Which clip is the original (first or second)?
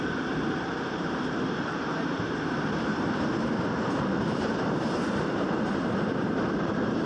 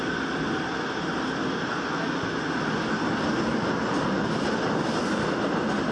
second